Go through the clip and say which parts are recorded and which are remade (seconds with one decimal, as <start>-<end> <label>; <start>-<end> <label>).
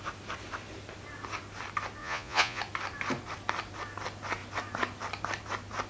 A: 0.0-2.0 recorded; 2.0-2.6 remade; 2.6-5.9 recorded